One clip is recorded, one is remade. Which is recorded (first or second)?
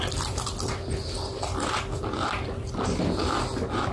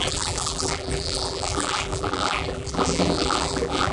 first